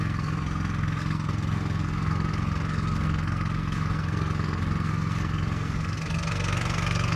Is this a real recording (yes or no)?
no